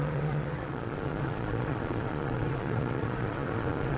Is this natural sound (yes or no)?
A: no